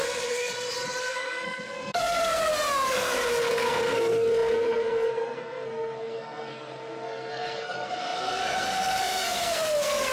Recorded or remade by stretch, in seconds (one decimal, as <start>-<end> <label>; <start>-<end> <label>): 0.0-0.5 remade; 0.5-1.0 recorded; 1.0-10.1 remade